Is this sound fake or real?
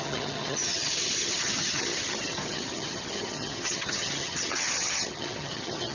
fake